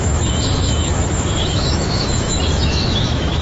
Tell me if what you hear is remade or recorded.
remade